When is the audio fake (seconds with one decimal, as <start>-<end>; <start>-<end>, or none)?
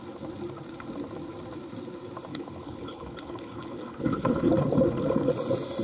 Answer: 2.3-4.5